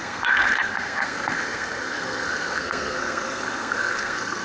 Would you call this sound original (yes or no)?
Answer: no